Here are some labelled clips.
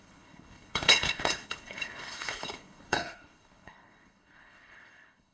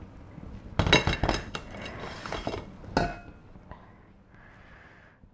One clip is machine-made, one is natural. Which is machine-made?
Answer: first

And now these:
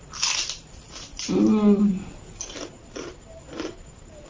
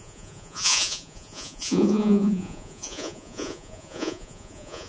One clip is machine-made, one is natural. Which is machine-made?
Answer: second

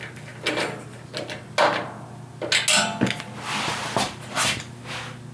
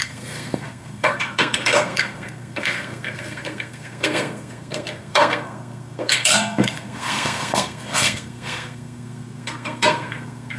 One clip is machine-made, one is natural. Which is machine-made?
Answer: second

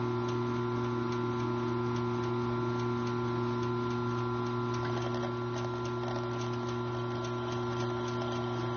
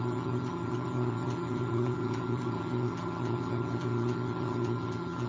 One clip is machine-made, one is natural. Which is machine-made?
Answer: second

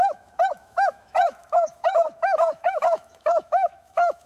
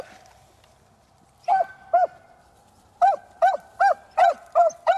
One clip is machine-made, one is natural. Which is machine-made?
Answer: first